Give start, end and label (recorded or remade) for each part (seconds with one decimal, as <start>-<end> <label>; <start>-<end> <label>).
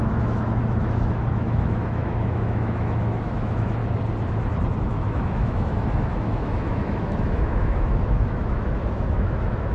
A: 0.0-3.8 remade; 3.8-4.8 recorded; 4.8-9.7 remade